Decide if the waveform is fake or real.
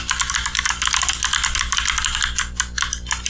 real